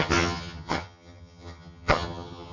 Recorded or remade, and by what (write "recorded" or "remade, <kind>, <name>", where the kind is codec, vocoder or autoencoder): remade, vocoder, HiFi-GAN